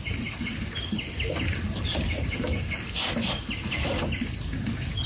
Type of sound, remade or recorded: recorded